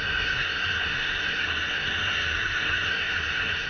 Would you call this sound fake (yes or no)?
yes